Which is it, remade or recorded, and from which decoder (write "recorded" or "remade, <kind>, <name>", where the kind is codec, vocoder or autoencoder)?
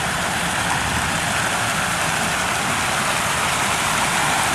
recorded